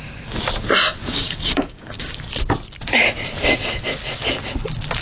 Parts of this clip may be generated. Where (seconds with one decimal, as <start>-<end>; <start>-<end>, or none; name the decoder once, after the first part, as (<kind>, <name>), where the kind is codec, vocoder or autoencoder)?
1.0-2.2 (codec, DAC)